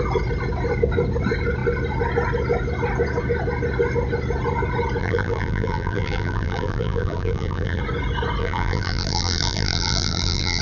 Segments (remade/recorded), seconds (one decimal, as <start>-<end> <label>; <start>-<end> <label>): 0.0-5.0 recorded; 5.0-7.8 remade; 7.8-8.4 recorded; 8.4-10.6 remade